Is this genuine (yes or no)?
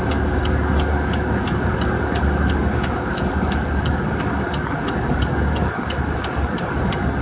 no